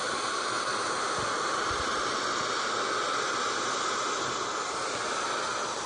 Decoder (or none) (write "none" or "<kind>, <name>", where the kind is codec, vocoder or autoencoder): none